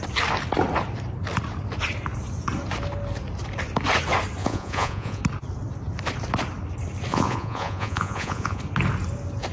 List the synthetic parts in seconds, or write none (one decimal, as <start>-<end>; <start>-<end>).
4.4-5.2; 7.1-8.6